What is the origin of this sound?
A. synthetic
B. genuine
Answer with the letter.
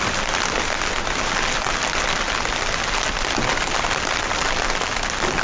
B